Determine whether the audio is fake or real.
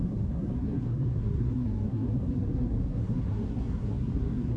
fake